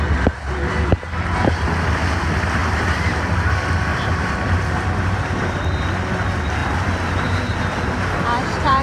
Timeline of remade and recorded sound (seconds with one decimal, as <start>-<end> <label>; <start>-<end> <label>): 0.0-2.6 recorded; 2.6-3.3 remade; 3.3-3.9 recorded; 3.9-5.5 remade; 5.5-6.6 recorded; 6.6-8.8 remade